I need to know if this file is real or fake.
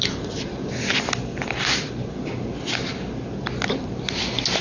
real